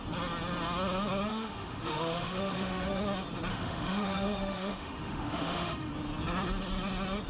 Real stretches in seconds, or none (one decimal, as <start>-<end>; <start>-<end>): 0.0-1.3; 3.0-3.5; 5.9-7.3